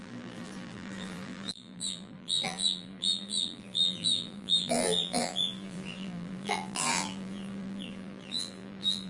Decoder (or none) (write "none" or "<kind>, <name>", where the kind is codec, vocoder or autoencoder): vocoder, BigVGAN v2